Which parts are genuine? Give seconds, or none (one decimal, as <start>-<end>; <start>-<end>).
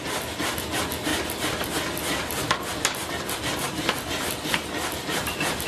0.0-5.7